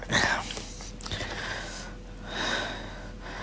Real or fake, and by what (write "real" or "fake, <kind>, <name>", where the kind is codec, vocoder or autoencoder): real